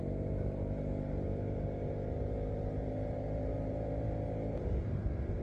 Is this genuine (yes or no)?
no